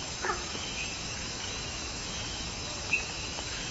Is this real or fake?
fake